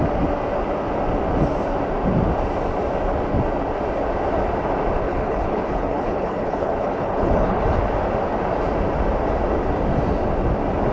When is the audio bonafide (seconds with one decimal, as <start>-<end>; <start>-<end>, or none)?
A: 0.0-5.0; 7.6-10.9

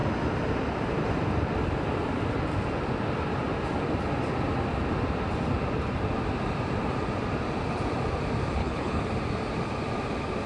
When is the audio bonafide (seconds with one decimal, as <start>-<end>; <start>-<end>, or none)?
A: 0.0-8.6; 9.1-10.5

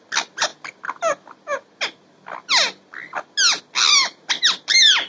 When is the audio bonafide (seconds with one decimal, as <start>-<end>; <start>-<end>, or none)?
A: 0.0-5.1

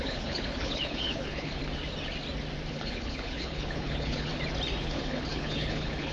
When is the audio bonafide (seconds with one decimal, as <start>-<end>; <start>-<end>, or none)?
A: 1.6-2.7; 4.3-4.8

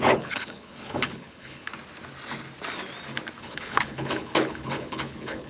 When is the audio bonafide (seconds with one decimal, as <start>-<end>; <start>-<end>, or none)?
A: 1.7-3.4

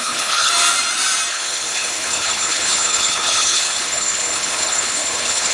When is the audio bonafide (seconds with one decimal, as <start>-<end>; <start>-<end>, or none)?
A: 0.5-1.3